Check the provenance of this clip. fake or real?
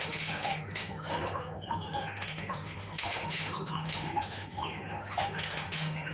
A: fake